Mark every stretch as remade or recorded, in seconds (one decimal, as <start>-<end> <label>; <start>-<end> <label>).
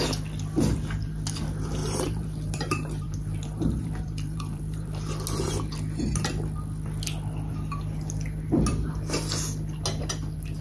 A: 0.0-1.8 recorded; 1.8-5.1 remade; 5.1-10.6 recorded